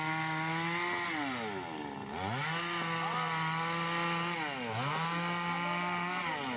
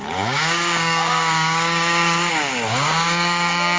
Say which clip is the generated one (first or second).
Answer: second